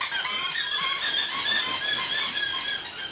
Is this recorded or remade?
recorded